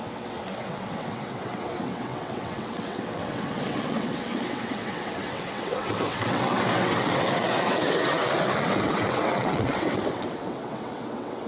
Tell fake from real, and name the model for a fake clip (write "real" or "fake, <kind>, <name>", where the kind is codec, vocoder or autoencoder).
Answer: fake, vocoder, WaveNeXt